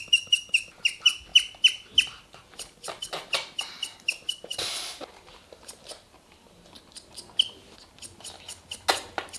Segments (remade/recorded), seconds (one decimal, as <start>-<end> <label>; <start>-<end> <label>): 0.0-9.4 recorded